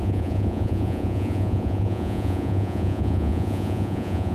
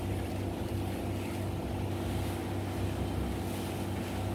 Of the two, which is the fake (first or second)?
first